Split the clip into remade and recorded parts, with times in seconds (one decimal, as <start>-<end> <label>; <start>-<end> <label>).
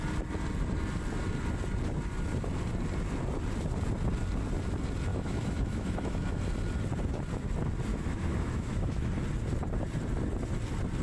0.0-5.1 recorded; 5.1-6.4 remade; 6.4-7.9 recorded; 7.9-9.1 remade; 9.1-11.0 recorded